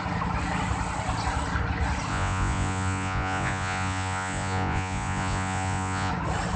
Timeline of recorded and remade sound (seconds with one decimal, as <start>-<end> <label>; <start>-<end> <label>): 0.0-2.1 recorded; 2.1-6.1 remade; 6.1-6.6 recorded